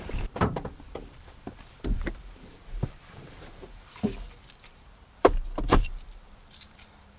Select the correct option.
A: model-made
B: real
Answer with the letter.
A